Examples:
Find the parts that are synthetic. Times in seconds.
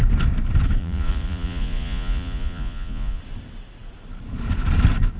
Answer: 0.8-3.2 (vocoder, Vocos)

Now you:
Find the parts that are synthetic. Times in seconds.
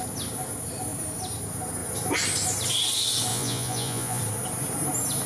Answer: 3.3-4.2 (vocoder, Vocos)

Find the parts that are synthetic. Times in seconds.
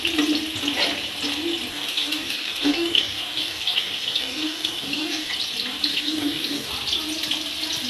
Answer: 1.7-5.3 (codec, DAC); 5.9-6.7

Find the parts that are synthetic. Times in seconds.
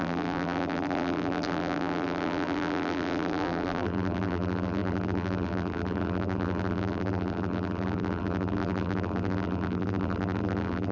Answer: 0.0-10.9 (vocoder, BigVGAN v2)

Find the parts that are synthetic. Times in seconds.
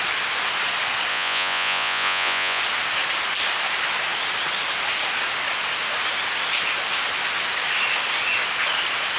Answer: 1.1-2.6 (vocoder, Vocos)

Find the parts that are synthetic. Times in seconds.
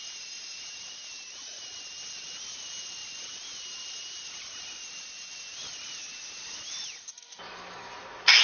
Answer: 0.0-1.1 (vocoder, BigVGAN v2); 3.0-4.4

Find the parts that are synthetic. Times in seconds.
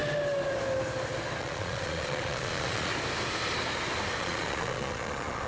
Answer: 1.4-2.9 (vocoder, Vocos); 4.2-5.5